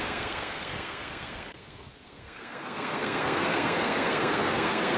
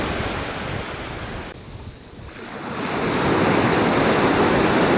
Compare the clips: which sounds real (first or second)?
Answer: second